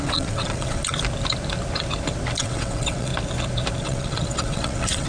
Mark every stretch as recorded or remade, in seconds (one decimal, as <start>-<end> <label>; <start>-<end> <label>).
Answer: 0.0-0.8 remade; 0.8-2.4 recorded; 2.4-3.1 remade; 3.1-3.8 recorded; 3.8-5.1 remade